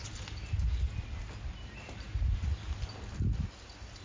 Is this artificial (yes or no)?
no